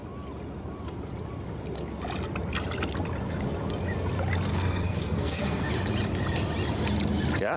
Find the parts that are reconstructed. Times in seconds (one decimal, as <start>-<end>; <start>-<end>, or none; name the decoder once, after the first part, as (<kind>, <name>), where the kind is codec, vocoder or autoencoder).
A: 4.5-5.7 (codec, SNAC)

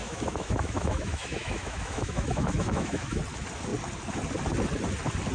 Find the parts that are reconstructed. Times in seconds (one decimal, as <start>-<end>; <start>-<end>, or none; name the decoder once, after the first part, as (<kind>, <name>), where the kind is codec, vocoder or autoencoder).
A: 0.0-3.2 (autoencoder, DAC-VAE)

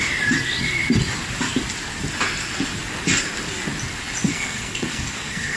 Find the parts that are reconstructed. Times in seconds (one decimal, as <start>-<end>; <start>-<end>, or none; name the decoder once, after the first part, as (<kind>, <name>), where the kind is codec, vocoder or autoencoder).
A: 4.3-5.6 (codec, SNAC)

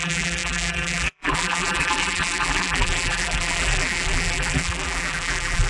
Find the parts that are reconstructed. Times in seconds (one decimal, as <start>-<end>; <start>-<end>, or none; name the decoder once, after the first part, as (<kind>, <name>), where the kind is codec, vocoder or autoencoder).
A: 0.0-5.7 (vocoder, BigVGAN v2)

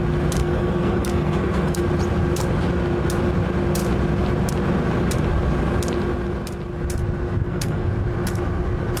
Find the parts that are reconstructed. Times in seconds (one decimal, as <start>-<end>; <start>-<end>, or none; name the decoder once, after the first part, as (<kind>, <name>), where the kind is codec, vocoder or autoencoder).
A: 0.4-1.8 (codec, SNAC); 7.4-7.9